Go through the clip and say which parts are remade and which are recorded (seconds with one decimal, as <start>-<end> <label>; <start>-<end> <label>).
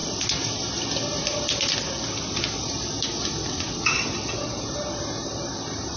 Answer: 0.0-3.4 recorded; 3.4-4.6 remade; 4.6-6.0 recorded